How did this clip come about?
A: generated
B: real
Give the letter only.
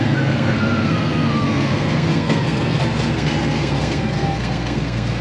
A